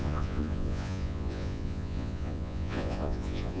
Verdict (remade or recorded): remade